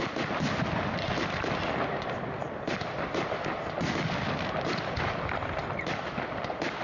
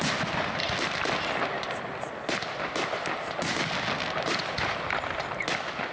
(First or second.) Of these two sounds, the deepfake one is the first